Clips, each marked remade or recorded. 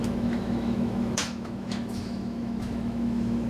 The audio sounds remade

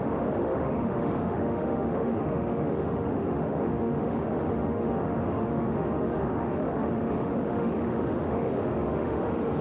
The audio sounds remade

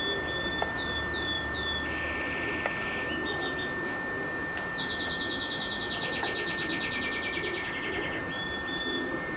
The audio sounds recorded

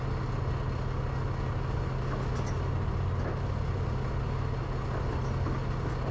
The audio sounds recorded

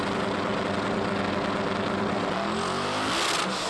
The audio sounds recorded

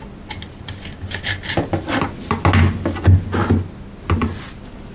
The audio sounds recorded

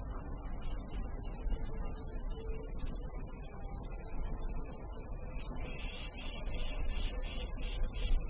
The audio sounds recorded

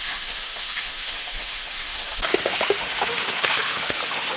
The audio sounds remade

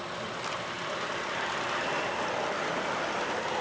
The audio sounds recorded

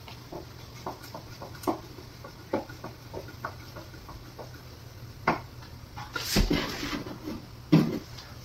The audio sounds recorded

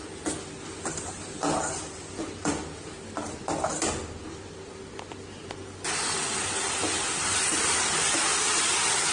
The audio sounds recorded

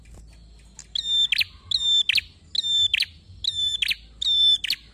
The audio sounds recorded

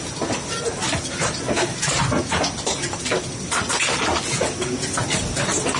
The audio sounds recorded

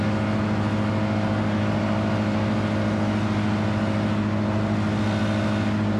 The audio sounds recorded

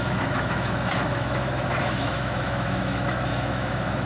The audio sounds remade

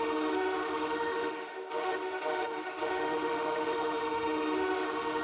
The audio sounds remade